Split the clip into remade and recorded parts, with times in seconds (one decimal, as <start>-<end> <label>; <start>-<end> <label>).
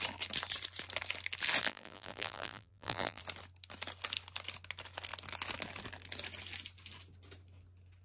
0.0-1.6 recorded; 1.6-3.2 remade; 3.2-8.0 recorded